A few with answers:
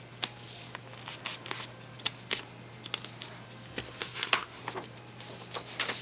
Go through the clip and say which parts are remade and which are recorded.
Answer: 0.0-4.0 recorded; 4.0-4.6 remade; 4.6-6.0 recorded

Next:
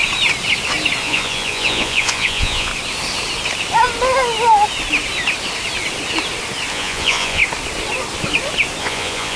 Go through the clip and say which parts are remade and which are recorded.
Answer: 0.0-1.0 recorded; 1.0-2.7 remade; 2.7-6.7 recorded; 6.7-7.4 remade; 7.4-8.8 recorded; 8.8-9.4 remade